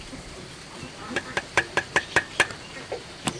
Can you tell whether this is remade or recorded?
remade